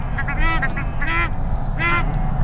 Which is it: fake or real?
real